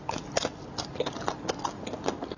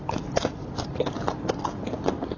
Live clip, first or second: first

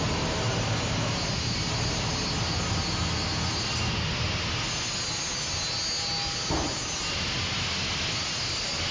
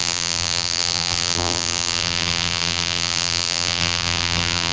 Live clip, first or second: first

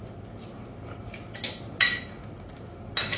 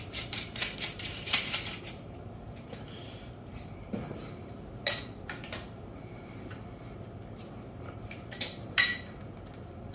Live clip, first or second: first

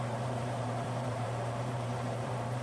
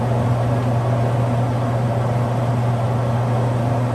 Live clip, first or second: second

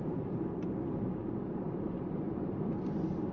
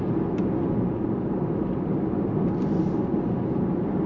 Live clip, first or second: second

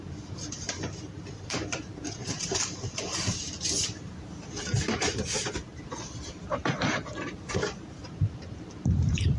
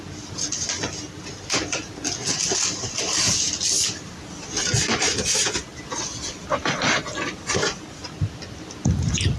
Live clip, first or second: second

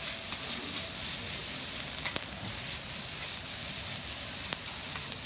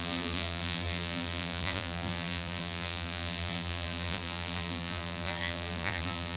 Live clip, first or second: first